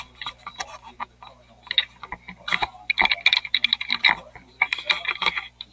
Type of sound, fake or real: real